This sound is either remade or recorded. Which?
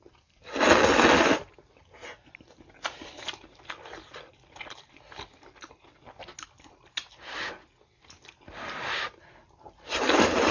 recorded